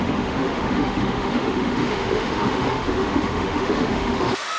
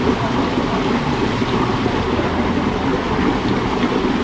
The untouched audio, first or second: second